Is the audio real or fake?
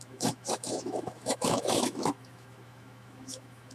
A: fake